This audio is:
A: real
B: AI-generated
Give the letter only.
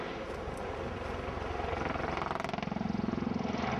A